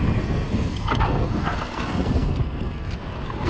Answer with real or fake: fake